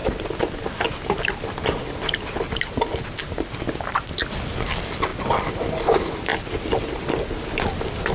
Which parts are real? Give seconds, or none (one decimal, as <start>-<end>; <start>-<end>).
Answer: 0.0-8.1